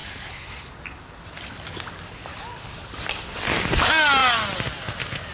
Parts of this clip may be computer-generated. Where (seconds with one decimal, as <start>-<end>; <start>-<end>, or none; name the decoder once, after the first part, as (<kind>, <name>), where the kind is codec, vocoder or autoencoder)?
none